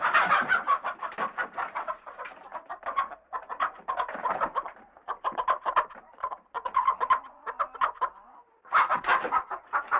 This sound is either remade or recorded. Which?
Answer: remade